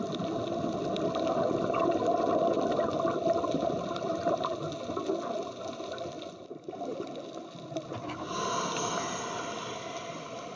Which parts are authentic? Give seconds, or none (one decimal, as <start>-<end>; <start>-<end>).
0.0-10.6